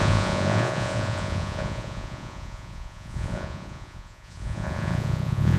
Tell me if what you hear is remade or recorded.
remade